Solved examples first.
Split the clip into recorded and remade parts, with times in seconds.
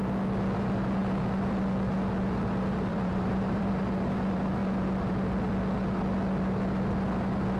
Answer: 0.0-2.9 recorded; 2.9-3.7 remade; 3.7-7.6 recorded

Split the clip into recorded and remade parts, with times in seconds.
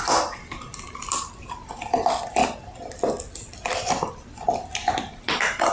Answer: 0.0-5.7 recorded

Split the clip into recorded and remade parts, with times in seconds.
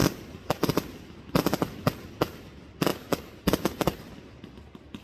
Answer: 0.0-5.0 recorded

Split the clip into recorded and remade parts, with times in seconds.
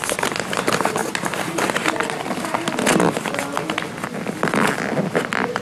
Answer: 0.0-5.6 recorded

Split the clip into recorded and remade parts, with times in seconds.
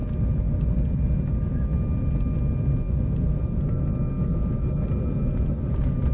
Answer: 0.0-6.1 recorded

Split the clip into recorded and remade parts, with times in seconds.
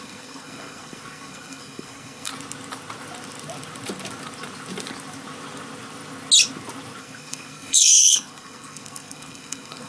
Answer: 0.0-2.3 remade; 2.3-7.0 recorded; 7.0-9.9 remade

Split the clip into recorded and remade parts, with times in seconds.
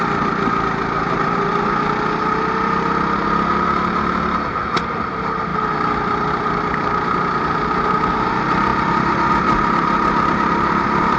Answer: 0.0-11.2 recorded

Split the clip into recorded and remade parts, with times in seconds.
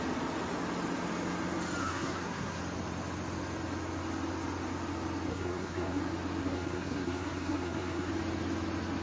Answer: 0.0-1.8 recorded; 1.8-2.6 remade; 2.6-5.3 recorded; 5.3-6.0 remade; 6.0-6.4 recorded; 6.4-8.1 remade; 8.1-9.0 recorded